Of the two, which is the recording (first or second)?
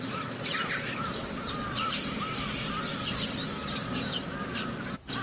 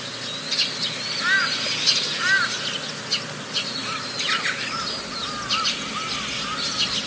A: second